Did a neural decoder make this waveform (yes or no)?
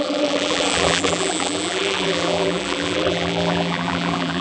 yes